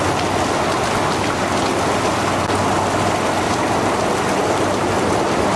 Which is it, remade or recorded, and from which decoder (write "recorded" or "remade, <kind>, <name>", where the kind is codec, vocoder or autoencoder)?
recorded